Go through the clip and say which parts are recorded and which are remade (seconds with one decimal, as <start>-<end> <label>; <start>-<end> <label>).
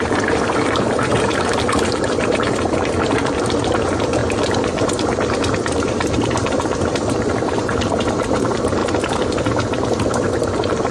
0.0-4.2 remade; 4.2-5.4 recorded; 5.4-8.8 remade; 8.8-9.9 recorded; 9.9-10.9 remade